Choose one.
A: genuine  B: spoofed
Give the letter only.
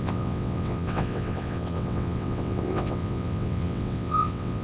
B